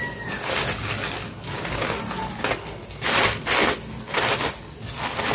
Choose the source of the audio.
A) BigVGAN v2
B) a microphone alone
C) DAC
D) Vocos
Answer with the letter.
B